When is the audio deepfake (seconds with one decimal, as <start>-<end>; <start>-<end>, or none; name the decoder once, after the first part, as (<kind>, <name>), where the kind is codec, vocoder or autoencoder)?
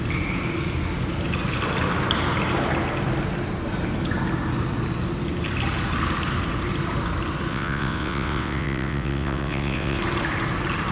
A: 7.5-10.0 (vocoder, WaveNeXt)